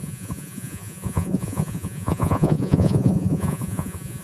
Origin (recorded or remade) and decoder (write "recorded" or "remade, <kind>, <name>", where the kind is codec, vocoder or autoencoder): remade, vocoder, Vocos